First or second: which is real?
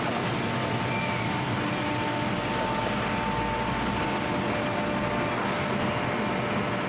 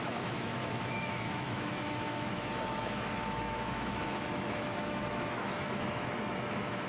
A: first